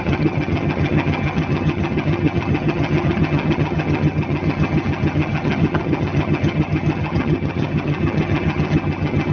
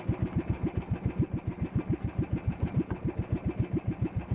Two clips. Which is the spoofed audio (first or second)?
first